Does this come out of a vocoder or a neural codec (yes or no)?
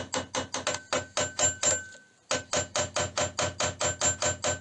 no